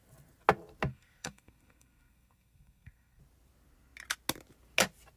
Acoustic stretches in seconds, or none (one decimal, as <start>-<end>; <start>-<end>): 0.0-0.9; 3.2-5.2